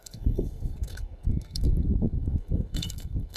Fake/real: fake